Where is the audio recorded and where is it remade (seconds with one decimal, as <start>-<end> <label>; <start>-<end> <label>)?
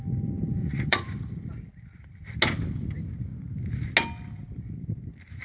0.0-0.6 recorded; 0.6-1.2 remade; 1.2-5.4 recorded